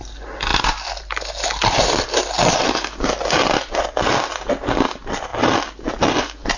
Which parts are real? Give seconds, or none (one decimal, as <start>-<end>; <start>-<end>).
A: 0.0-6.6